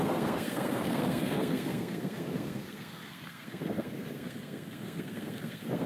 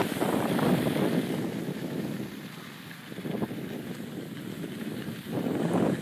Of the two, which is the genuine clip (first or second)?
second